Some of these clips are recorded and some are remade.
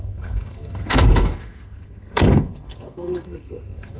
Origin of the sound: remade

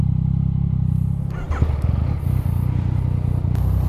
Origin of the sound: recorded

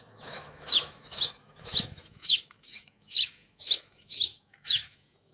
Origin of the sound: remade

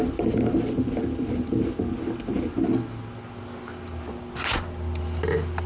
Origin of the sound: recorded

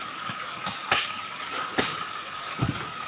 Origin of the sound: remade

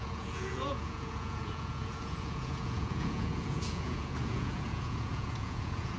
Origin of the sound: remade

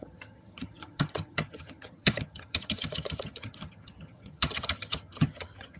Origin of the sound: remade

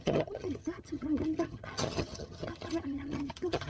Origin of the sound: remade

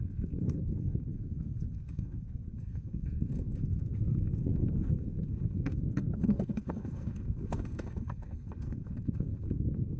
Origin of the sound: remade